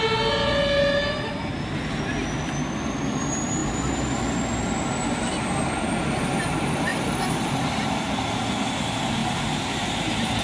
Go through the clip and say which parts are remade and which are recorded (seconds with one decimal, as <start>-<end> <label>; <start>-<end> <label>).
0.0-6.9 recorded; 6.9-8.1 remade; 8.1-9.2 recorded; 9.2-10.4 remade